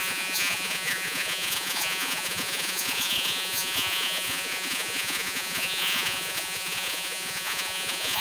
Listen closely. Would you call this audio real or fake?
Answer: fake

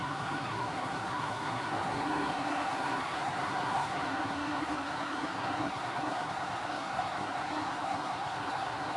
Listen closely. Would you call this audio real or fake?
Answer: fake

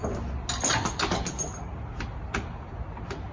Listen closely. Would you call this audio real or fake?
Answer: real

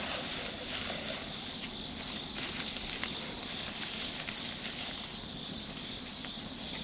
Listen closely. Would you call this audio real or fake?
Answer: real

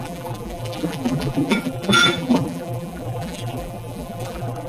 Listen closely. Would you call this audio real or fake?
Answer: fake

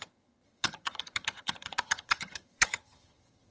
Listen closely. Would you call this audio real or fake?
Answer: fake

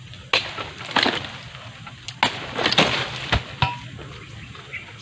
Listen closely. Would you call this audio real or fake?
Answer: real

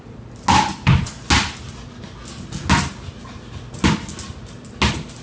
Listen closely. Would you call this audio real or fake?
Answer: real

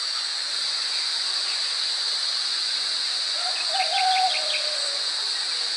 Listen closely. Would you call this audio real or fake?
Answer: fake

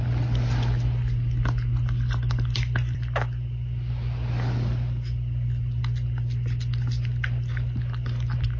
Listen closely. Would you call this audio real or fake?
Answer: real